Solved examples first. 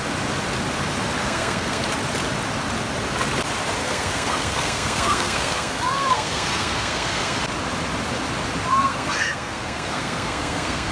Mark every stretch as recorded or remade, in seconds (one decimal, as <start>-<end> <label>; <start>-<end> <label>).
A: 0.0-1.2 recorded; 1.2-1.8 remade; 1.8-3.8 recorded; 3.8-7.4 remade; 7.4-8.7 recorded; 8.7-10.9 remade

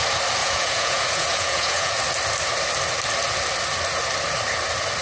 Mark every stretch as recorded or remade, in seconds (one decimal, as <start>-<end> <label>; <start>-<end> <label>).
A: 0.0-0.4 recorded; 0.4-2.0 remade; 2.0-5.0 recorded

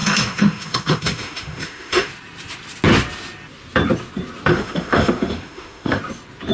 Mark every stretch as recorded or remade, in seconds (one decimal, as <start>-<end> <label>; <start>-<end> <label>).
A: 0.0-2.1 remade; 2.1-4.5 recorded; 4.5-6.0 remade; 6.0-6.5 recorded